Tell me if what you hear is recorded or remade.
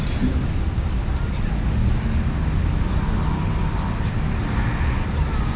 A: recorded